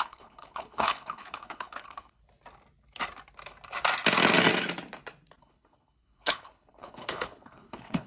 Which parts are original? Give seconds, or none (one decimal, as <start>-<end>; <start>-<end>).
2.2-5.4